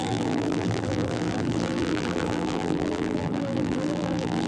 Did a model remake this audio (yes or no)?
yes